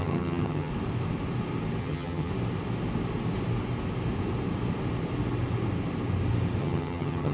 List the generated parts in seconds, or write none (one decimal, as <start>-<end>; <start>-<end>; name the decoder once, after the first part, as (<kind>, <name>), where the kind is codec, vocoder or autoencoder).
0.0-0.7 (vocoder, HiFi-GAN); 1.8-2.3; 6.6-7.3